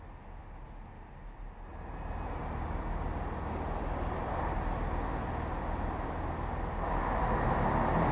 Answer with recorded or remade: recorded